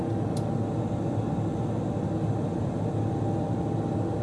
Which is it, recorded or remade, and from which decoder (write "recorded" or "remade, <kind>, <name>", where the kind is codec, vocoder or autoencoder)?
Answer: recorded